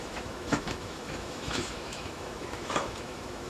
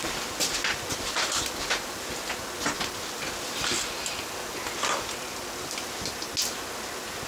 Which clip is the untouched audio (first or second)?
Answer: second